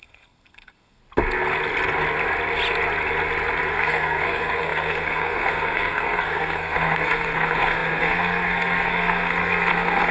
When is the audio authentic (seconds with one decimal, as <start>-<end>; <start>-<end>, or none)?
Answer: 1.0-3.7